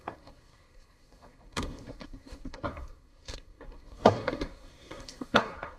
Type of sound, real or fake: fake